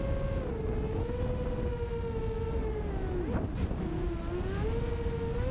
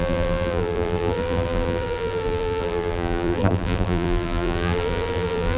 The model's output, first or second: second